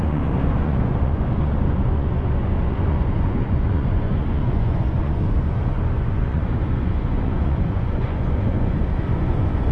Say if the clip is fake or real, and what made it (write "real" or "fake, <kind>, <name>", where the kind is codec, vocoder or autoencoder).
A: fake, vocoder, Vocos